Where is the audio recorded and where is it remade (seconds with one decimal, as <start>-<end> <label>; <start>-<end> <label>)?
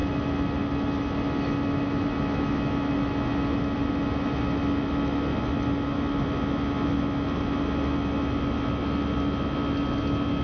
0.0-10.4 recorded